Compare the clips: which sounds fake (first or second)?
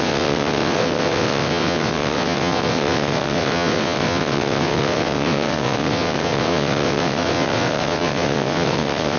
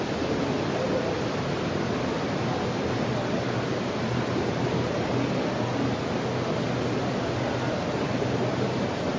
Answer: first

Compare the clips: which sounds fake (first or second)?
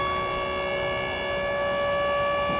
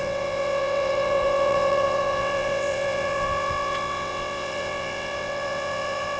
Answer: second